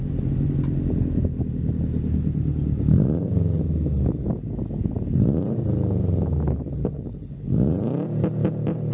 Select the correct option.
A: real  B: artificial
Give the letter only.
A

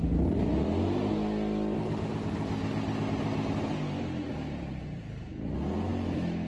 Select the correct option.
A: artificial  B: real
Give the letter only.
B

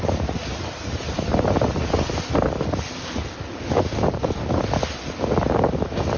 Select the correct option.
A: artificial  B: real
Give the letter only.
B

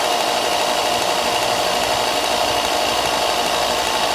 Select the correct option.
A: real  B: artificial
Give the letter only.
A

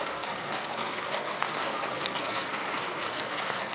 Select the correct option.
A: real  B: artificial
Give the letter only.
B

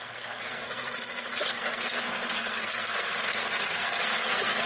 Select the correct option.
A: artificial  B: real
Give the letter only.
A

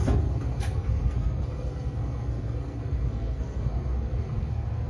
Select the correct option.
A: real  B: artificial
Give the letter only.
B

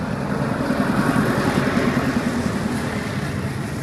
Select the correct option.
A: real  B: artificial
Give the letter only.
A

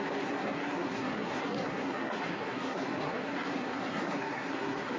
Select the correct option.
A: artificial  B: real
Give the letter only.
A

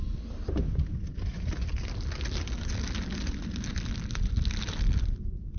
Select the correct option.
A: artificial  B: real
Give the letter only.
B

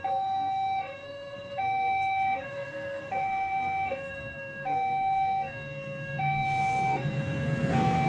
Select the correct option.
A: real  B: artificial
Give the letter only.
B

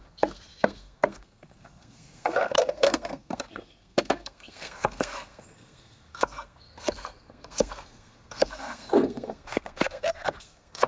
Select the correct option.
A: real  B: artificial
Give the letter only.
B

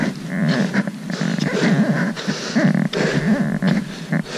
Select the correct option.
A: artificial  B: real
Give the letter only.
B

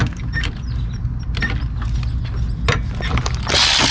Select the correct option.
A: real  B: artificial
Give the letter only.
A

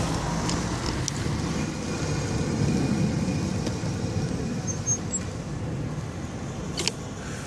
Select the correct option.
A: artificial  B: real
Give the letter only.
B